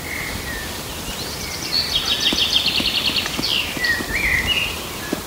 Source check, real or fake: fake